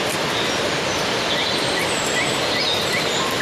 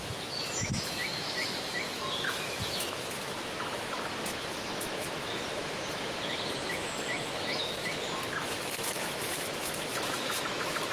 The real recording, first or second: first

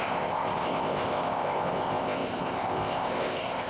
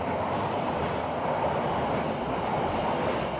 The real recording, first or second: second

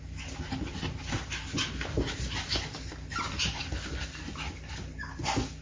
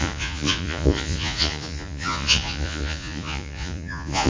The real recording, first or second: first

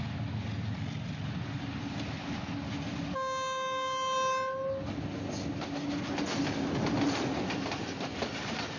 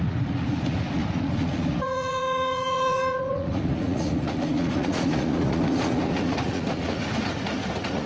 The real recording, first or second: first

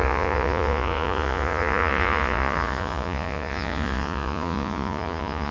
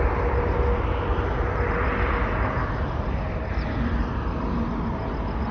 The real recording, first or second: second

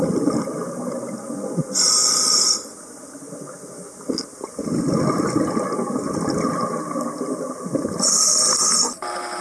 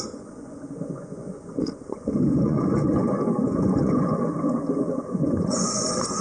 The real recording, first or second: first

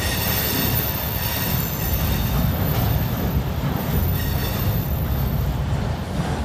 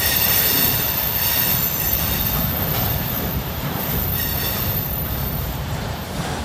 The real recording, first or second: first